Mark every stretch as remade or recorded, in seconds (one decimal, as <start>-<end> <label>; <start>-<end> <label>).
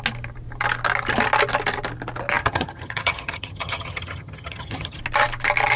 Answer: 0.0-2.4 recorded; 2.4-5.0 remade; 5.0-5.8 recorded